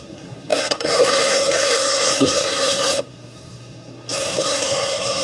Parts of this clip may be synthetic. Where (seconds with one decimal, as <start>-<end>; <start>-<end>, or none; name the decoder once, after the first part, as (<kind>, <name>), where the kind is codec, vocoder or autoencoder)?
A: 0.0-5.2 (codec, SNAC)

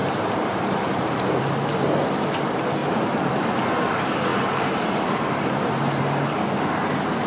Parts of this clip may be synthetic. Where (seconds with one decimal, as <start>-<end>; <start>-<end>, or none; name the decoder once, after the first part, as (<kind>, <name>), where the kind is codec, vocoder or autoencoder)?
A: 0.0-1.4 (vocoder, BigVGAN v2); 2.8-3.4; 4.3-6.0

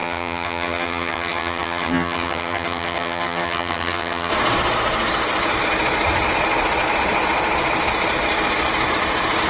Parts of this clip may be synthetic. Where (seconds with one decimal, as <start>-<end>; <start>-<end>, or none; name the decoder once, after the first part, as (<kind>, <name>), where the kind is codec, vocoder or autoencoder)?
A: 0.0-4.3 (vocoder, HiFi-GAN)

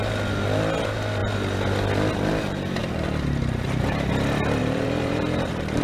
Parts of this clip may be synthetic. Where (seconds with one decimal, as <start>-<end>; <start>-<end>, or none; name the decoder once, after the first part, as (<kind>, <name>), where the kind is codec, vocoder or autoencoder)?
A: 2.8-4.1 (vocoder, BigVGAN v2); 4.6-5.2

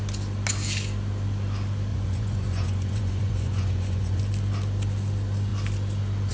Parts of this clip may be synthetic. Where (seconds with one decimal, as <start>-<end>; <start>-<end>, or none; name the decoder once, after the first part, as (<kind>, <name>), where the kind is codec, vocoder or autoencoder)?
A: 1.9-4.2 (vocoder, Vocos)

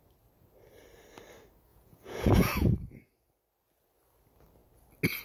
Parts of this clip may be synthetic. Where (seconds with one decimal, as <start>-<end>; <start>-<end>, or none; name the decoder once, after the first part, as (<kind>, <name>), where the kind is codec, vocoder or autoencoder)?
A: 1.7-3.1 (vocoder, Vocos)